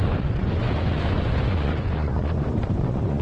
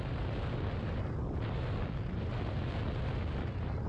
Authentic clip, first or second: second